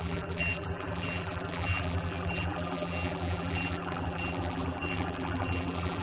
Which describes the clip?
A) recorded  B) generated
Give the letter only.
B